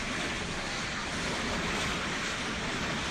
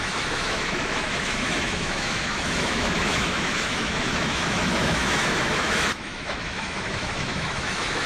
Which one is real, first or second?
first